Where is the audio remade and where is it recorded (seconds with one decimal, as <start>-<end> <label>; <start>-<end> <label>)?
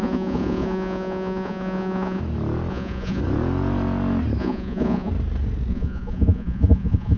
0.0-2.2 remade; 2.2-2.7 recorded; 2.7-3.2 remade; 3.2-4.4 recorded; 4.4-5.1 remade; 5.1-5.7 recorded; 5.7-7.2 remade